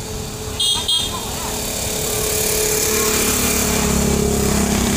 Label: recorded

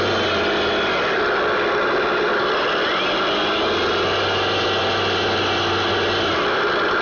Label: recorded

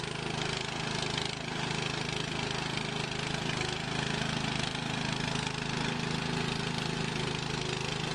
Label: recorded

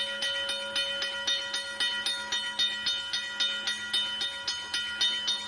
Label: recorded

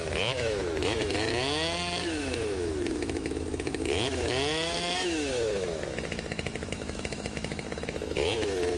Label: remade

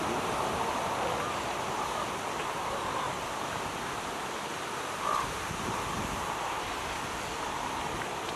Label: recorded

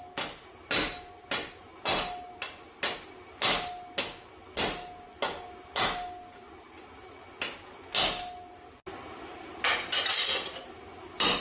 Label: recorded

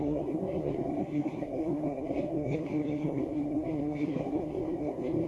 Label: remade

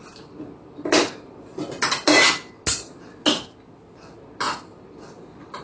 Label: recorded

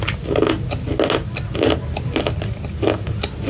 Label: recorded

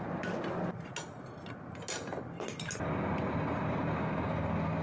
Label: recorded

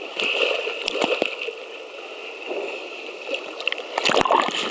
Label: recorded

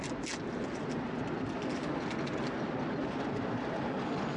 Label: recorded